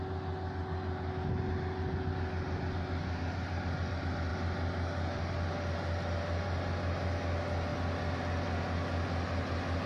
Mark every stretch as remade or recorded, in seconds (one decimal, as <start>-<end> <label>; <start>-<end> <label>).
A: 0.0-9.9 recorded